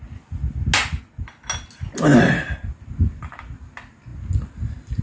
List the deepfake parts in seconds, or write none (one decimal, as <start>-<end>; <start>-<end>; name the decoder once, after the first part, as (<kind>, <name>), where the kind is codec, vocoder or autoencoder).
none

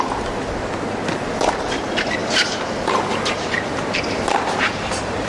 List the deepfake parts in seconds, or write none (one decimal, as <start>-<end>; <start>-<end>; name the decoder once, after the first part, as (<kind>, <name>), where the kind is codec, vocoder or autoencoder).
2.2-5.3 (vocoder, BigVGAN v2)